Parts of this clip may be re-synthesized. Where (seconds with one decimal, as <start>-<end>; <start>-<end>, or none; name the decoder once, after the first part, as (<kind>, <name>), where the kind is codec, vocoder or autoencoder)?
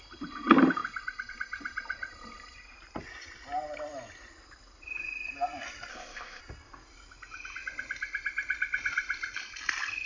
5.9-6.4 (codec, ZipCodec)